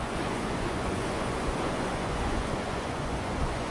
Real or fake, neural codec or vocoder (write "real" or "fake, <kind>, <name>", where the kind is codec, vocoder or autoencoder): fake, vocoder, Vocos